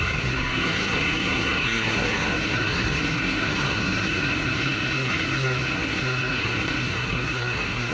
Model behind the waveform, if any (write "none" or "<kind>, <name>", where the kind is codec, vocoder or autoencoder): codec, SNAC